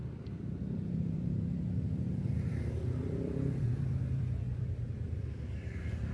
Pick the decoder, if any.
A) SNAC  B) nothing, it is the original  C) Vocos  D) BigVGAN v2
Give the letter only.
D